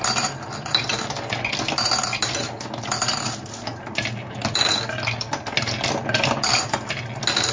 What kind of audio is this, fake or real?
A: real